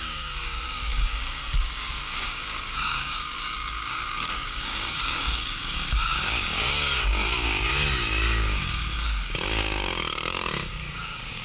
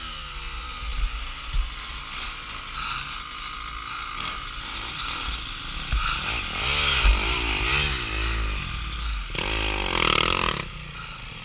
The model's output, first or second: first